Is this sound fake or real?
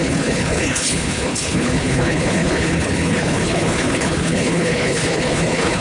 fake